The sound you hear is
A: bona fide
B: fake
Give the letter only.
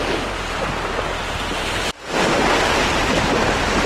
A